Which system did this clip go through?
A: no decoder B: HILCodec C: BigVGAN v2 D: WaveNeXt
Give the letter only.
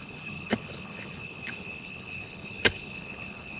B